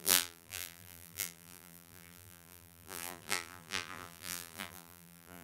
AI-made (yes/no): yes